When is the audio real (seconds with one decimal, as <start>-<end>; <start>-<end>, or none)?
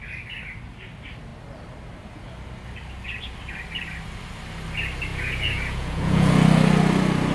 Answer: 0.0-5.1; 6.3-7.3